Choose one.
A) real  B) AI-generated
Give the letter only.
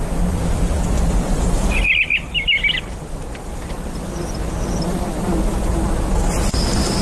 A